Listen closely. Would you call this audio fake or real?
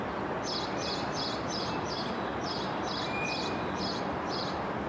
real